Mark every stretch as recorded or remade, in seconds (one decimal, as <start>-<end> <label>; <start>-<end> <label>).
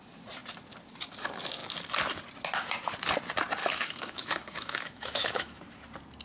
0.0-3.6 recorded; 3.6-5.6 remade; 5.6-6.2 recorded